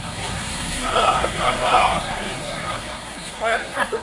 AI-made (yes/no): yes